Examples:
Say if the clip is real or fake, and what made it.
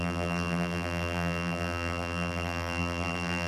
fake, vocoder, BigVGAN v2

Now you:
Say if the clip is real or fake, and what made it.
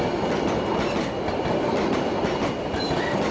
real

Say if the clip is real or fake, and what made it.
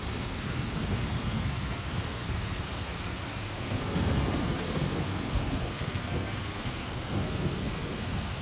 fake, codec, SNAC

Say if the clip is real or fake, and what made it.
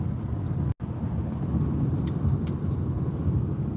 real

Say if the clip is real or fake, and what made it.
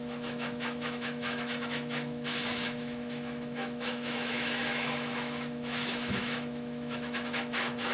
fake, autoencoder, DAC-VAE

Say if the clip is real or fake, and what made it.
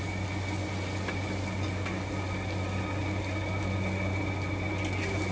real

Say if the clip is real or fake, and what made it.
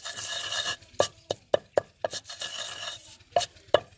real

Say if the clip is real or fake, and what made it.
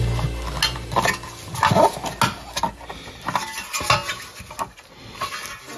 real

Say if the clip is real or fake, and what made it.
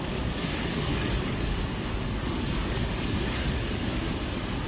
fake, codec, DAC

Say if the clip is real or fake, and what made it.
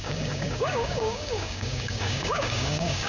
fake, codec, DAC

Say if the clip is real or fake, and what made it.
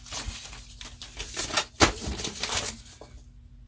real